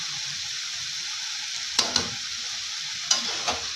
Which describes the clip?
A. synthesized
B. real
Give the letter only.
B